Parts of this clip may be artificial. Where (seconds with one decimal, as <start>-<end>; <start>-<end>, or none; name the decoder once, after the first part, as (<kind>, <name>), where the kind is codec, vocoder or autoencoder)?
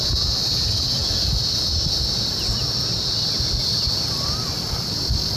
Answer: 0.0-1.0 (vocoder, BigVGAN v2); 3.3-5.4